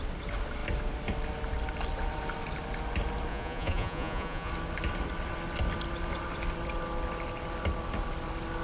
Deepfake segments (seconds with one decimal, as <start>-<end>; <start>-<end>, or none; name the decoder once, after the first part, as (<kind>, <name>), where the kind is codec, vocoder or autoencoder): 3.3-4.5 (vocoder, Vocos)